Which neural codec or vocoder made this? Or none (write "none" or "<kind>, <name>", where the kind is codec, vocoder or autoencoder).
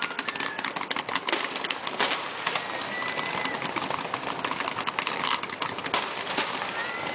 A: none